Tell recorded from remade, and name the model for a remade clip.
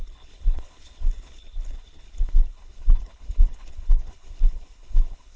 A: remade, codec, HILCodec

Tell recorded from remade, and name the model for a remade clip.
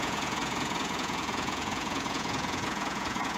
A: remade, vocoder, Vocos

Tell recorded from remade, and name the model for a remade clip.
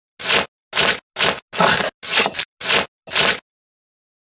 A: recorded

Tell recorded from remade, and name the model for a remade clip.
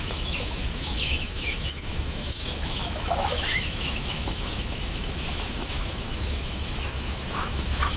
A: remade, autoencoder, DAC-VAE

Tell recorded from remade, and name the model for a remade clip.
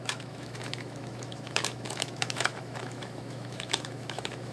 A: remade, autoencoder, DAC-VAE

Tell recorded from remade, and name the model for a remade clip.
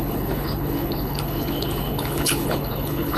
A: remade, codec, HILCodec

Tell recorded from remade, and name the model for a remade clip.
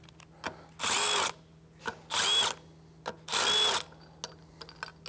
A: recorded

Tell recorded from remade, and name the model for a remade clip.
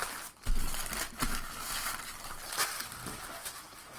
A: recorded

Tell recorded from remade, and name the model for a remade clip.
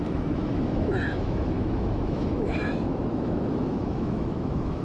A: remade, autoencoder, DAC-VAE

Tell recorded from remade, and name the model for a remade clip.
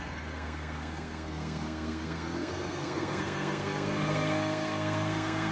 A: remade, codec, SNAC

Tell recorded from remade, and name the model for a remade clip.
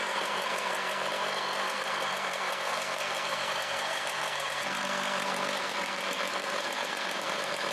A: remade, codec, SNAC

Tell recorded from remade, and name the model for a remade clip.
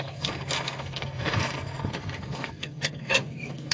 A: remade, codec, SNAC